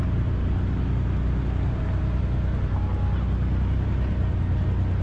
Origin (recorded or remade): recorded